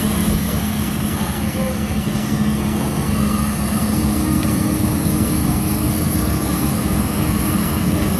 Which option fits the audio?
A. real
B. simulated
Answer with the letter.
B